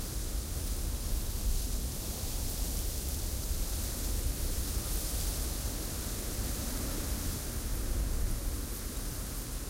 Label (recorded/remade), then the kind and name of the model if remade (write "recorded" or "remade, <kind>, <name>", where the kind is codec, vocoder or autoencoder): recorded